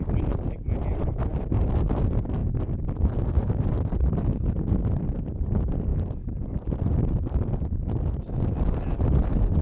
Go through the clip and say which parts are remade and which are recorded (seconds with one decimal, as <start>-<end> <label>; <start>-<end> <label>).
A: 0.0-9.6 recorded